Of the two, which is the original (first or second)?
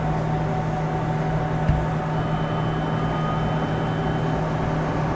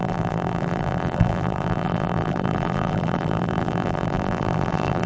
first